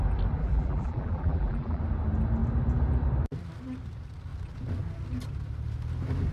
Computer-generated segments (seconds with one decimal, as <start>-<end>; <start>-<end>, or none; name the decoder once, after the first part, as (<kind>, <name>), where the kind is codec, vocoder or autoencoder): 0.4-1.8 (vocoder, BigVGAN v2)